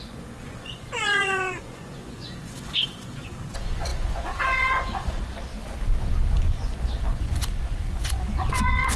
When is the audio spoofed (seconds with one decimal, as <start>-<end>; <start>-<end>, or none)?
0.0-5.5; 6.4-9.0